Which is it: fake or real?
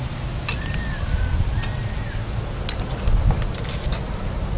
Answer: real